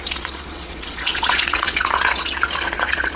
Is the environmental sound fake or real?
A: fake